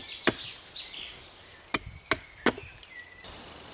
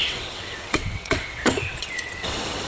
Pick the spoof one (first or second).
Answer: second